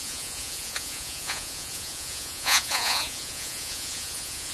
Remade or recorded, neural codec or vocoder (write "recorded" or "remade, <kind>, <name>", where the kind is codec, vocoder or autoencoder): remade, vocoder, Vocos